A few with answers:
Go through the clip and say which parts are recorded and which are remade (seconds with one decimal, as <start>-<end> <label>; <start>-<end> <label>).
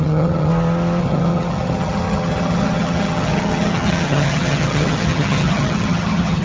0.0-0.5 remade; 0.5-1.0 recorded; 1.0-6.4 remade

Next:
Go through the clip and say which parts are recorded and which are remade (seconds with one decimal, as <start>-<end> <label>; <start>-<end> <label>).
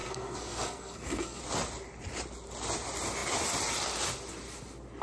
0.0-1.4 remade; 1.4-5.0 recorded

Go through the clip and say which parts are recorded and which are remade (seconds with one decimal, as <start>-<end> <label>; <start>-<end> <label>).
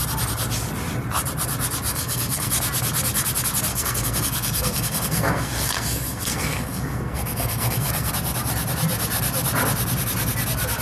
0.0-1.9 recorded; 1.9-2.5 remade; 2.5-3.7 recorded; 3.7-8.1 remade; 8.1-10.8 recorded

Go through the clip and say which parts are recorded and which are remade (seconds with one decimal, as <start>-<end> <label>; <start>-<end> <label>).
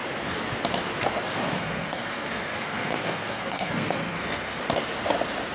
0.0-1.6 recorded; 1.6-4.6 remade; 4.6-5.5 recorded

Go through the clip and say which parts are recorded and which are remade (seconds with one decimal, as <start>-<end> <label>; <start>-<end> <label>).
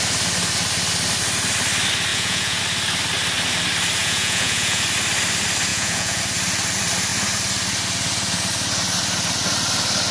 0.0-2.1 recorded; 2.1-2.6 remade; 2.6-4.0 recorded; 4.0-4.8 remade; 4.8-5.7 recorded; 5.7-6.2 remade; 6.2-10.1 recorded